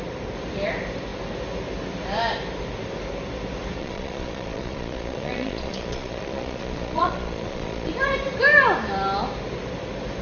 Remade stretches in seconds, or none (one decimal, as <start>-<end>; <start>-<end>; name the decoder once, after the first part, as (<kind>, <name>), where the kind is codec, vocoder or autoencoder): 3.8-7.9 (vocoder, Vocos)